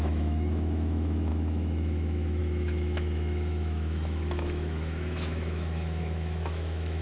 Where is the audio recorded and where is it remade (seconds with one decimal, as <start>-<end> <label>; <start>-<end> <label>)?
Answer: 0.0-7.0 remade